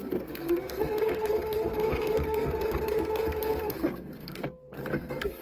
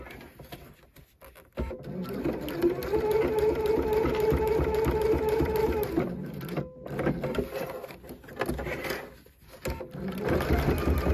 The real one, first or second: second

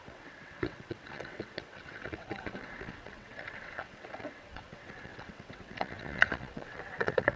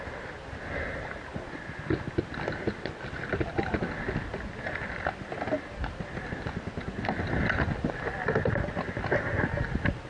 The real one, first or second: second